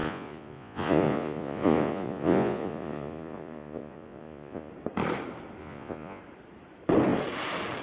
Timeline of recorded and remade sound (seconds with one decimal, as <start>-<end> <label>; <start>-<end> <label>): 0.0-4.7 remade; 4.7-5.6 recorded; 5.6-6.2 remade; 6.2-7.8 recorded